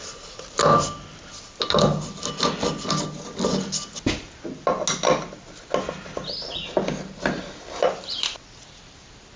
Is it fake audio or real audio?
real